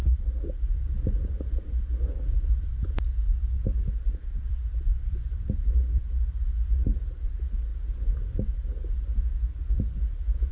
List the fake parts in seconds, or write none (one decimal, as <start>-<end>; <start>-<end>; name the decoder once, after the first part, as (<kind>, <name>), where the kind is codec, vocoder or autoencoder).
4.3-6.4 (vocoder, BigVGAN v2)